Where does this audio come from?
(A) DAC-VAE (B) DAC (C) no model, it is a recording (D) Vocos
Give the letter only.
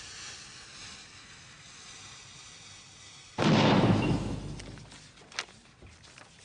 C